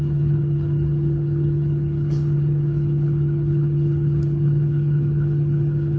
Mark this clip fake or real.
fake